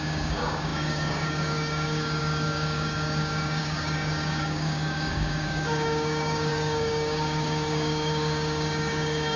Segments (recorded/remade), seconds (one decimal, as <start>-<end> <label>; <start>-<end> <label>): 0.0-9.4 remade